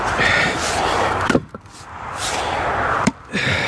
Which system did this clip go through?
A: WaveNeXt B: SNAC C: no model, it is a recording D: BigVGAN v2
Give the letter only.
D